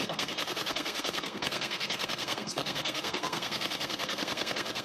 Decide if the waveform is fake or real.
fake